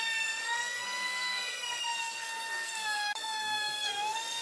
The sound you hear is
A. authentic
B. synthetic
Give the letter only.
B